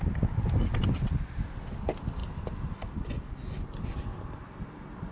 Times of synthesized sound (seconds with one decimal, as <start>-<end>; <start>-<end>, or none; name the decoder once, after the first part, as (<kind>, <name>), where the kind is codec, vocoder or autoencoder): none